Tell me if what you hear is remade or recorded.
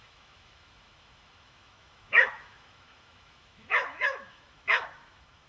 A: remade